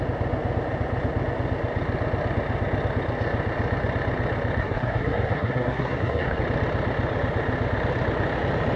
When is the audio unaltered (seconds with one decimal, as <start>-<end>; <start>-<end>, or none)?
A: 0.0-4.6; 6.4-8.8